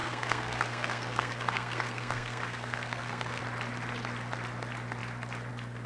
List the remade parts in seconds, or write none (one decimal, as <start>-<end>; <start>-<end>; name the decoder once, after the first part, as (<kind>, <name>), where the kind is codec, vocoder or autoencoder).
0.0-3.4 (codec, SNAC)